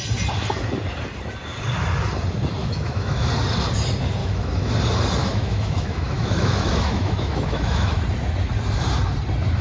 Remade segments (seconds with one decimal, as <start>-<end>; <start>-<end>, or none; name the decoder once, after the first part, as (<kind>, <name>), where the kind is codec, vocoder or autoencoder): 2.6-3.3 (autoencoder, DAC-VAE); 4.2-4.7; 5.2-8.0